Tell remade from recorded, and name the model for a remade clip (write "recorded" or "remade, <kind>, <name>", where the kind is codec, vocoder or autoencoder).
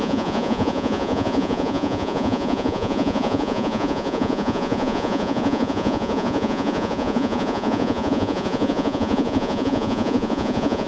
remade, vocoder, Vocos